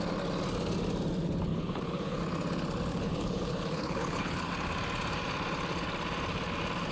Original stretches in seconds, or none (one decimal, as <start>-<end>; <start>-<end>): 0.0-1.5; 2.2-2.9; 4.5-6.9